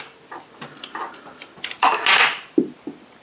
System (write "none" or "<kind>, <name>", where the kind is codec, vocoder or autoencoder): none